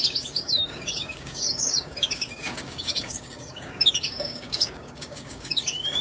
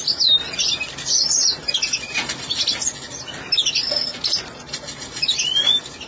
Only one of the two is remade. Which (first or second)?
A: first